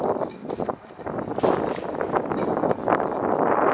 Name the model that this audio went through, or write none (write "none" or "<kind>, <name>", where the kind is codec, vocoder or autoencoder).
none